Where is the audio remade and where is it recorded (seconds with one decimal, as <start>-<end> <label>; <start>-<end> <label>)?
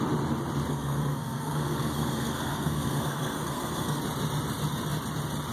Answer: 0.0-0.7 recorded; 0.7-4.0 remade; 4.0-5.5 recorded